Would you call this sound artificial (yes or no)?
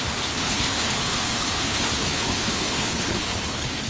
yes